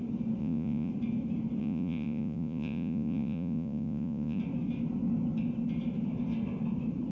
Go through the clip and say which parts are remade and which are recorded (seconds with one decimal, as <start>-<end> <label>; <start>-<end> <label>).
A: 0.0-0.4 recorded; 0.4-0.9 remade; 0.9-1.6 recorded; 1.6-4.4 remade; 4.4-7.1 recorded